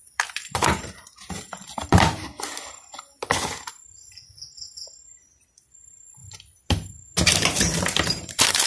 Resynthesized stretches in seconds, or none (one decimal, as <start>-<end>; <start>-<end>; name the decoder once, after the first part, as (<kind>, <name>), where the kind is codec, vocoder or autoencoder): 0.0-2.3 (vocoder, BigVGAN v2); 5.0-6.2; 7.6-8.7